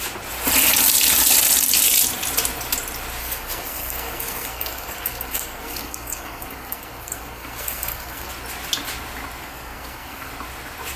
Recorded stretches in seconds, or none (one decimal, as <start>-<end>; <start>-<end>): 0.0-3.2; 8.3-9.4; 10.3-11.0